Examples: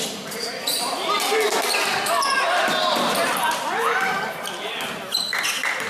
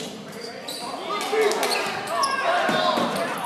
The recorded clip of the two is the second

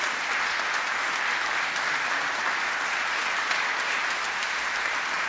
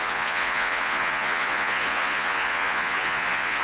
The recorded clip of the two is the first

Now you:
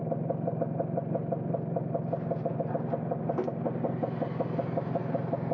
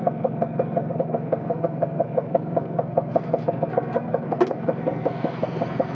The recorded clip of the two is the first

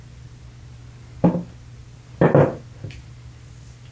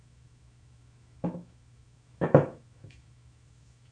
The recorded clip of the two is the first